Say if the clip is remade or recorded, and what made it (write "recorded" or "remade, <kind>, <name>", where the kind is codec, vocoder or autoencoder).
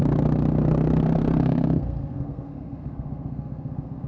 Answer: remade, codec, SNAC